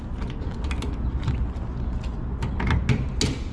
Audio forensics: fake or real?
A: real